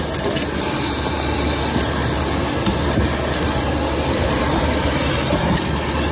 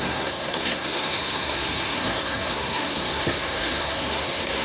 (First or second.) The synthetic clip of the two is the second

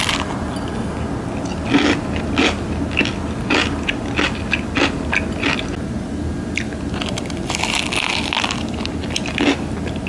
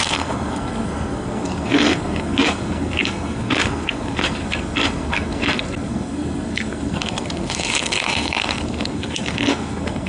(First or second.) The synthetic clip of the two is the second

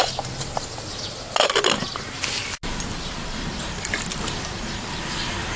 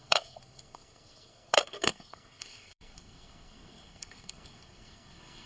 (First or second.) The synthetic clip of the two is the second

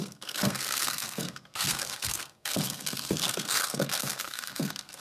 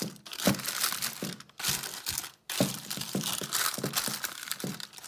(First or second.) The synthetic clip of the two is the first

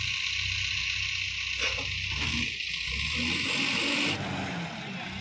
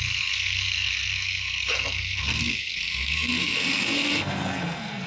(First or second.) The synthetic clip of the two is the second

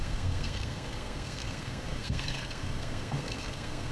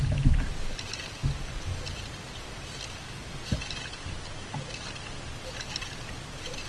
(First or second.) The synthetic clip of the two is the first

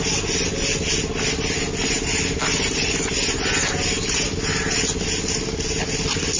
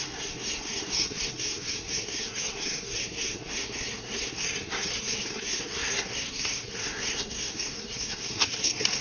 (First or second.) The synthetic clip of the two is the second